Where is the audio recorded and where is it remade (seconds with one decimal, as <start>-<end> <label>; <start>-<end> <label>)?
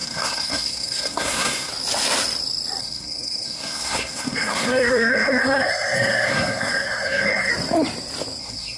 0.0-1.7 remade; 1.7-2.8 recorded; 2.8-7.5 remade; 7.5-8.4 recorded; 8.4-8.8 remade